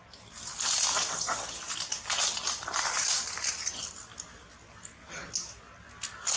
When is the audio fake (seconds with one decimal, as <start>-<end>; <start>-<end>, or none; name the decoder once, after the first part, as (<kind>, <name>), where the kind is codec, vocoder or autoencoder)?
none